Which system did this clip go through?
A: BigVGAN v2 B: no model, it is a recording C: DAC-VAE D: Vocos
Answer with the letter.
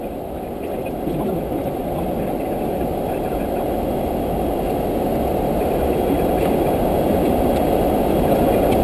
B